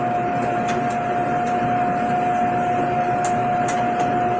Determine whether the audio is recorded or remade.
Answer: recorded